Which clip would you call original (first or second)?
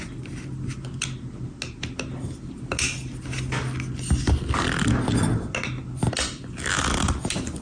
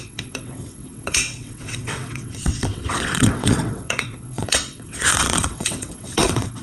first